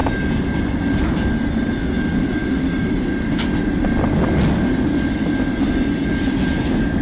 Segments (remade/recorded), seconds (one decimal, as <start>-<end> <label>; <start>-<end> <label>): 0.0-7.0 recorded